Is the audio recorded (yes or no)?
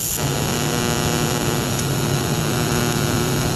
yes